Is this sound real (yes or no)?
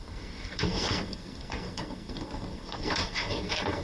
no